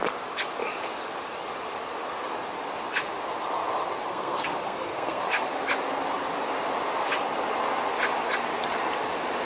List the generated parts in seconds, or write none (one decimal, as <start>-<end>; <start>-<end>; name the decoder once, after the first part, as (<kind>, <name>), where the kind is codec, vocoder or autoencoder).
4.1-5.2 (codec, SNAC)